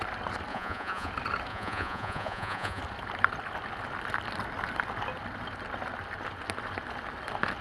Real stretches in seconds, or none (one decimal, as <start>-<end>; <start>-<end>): 0.0-0.5; 1.1-1.5; 2.8-7.6